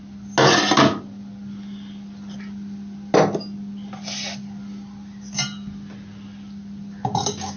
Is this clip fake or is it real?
real